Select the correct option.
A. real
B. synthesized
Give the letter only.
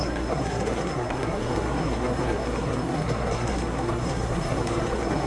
B